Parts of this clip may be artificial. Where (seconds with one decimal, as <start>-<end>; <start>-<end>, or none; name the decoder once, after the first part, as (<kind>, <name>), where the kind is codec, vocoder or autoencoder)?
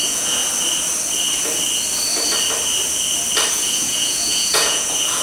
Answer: 0.0-0.4 (vocoder, Vocos); 3.5-5.2